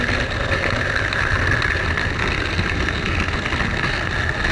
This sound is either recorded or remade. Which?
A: recorded